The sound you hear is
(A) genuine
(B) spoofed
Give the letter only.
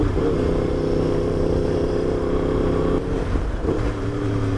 B